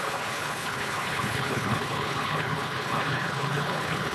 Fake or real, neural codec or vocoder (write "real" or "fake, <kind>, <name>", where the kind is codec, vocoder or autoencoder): fake, codec, HILCodec